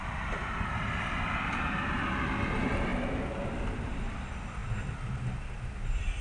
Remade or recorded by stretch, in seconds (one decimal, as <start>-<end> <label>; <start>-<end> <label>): 0.0-6.2 recorded